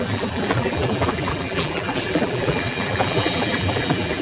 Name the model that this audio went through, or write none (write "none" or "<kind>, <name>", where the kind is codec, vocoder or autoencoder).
vocoder, BigVGAN v2